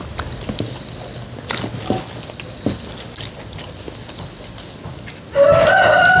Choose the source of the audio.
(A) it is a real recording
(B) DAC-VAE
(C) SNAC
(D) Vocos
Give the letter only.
A